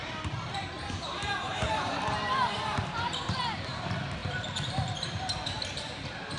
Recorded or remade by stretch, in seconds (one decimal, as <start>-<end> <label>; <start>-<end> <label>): 0.0-6.4 remade